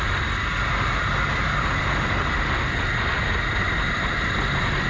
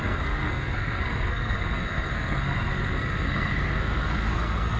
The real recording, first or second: first